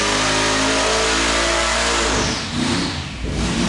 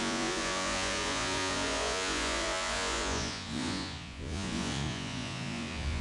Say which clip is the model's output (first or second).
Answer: second